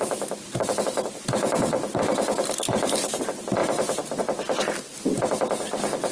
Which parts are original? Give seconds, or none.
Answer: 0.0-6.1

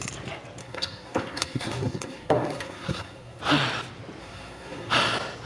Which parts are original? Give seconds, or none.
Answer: 0.0-0.6; 3.4-4.2; 4.9-5.5

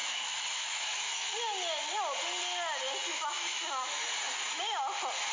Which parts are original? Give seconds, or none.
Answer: 1.3-3.1; 4.0-5.3